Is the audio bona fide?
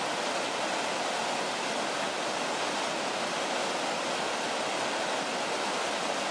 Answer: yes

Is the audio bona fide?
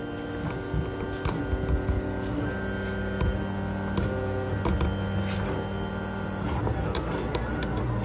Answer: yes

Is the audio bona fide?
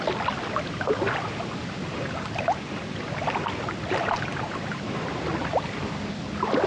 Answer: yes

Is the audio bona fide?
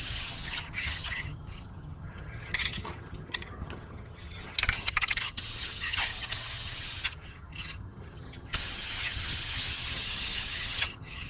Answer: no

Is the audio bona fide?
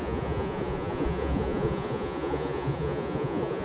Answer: no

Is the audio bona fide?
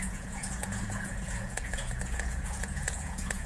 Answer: no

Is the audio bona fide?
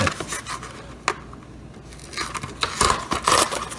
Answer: yes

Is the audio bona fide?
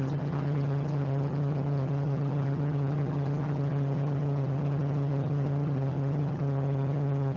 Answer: no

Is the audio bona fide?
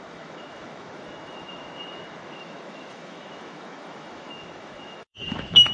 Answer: no